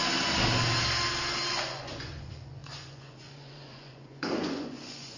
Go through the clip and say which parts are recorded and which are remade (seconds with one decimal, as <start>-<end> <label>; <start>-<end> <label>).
0.0-1.5 recorded; 1.5-5.2 remade